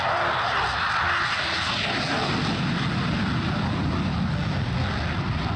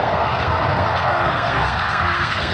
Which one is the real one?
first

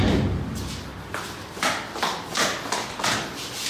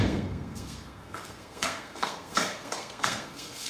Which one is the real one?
first